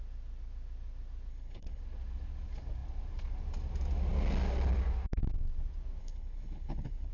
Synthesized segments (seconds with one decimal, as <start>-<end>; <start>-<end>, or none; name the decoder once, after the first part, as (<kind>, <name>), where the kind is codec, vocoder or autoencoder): 1.3-1.8 (codec, HILCodec); 6.0-7.1